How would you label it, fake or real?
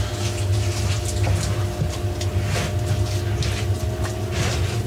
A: real